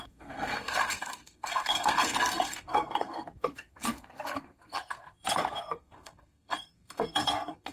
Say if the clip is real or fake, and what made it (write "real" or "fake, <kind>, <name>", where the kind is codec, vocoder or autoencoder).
fake, codec, SNAC